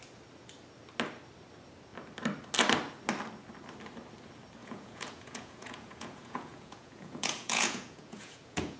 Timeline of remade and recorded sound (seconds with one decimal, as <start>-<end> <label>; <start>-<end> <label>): 0.0-4.6 recorded; 4.6-8.8 remade